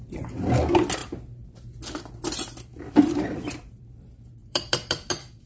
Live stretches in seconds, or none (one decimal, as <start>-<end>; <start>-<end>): 0.0-2.7; 3.2-4.4

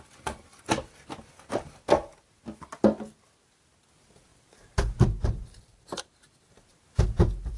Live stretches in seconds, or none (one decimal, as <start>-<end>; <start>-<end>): 0.0-4.3; 6.8-7.6

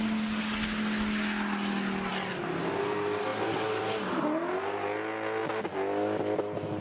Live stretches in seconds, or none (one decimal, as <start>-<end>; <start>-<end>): 0.0-6.8

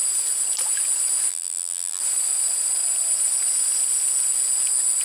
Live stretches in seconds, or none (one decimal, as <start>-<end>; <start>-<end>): 0.0-1.3; 2.0-5.0

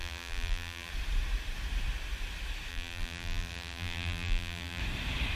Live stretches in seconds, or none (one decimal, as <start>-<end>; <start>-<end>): 0.9-2.7; 4.8-5.4

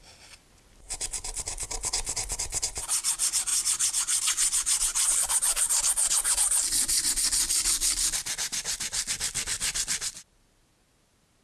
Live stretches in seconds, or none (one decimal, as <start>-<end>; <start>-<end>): 0.0-3.5; 7.1-11.4

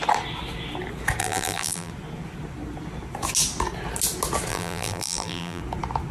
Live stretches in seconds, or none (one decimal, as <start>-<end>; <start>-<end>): 0.0-1.2; 1.9-4.5; 5.6-6.1